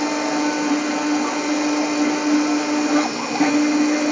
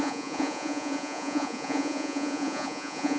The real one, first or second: first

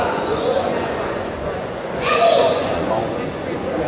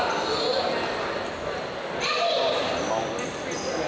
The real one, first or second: second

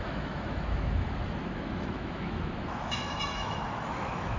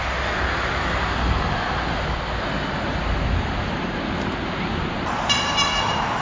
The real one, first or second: second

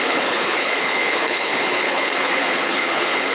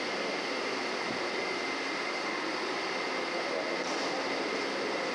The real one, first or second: second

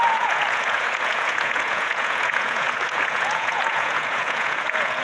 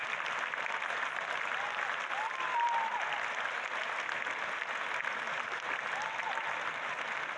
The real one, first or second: second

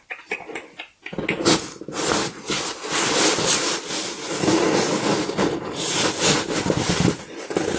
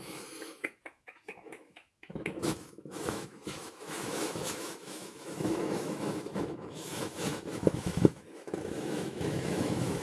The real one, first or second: first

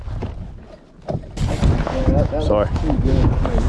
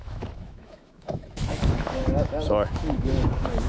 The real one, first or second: first